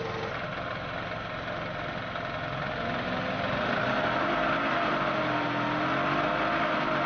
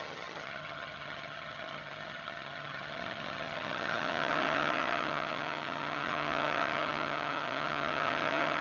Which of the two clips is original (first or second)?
first